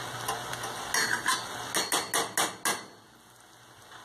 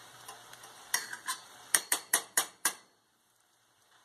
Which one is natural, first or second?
first